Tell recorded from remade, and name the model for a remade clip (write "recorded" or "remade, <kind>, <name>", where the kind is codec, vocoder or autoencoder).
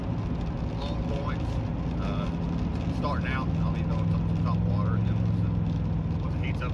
recorded